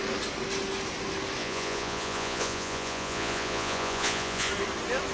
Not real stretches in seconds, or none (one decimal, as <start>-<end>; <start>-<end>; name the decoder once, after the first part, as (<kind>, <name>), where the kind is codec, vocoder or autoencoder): 1.4-4.5 (vocoder, Vocos)